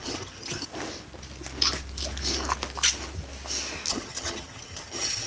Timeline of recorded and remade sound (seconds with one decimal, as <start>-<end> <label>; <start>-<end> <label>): 0.0-0.7 remade; 0.7-3.9 recorded; 3.9-5.3 remade

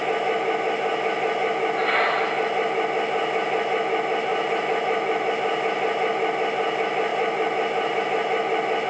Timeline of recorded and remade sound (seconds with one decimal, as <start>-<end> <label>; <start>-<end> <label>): 0.0-4.3 recorded; 4.3-5.3 remade; 5.3-7.1 recorded; 7.1-8.0 remade; 8.0-8.9 recorded

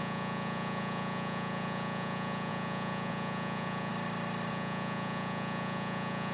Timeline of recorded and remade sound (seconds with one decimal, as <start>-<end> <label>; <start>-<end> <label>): 0.0-3.9 remade; 3.9-4.5 recorded; 4.5-6.3 remade

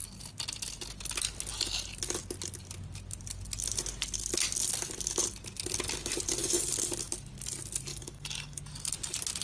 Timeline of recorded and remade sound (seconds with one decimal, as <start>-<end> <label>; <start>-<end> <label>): 0.0-7.9 recorded; 7.9-8.6 remade; 8.6-9.4 recorded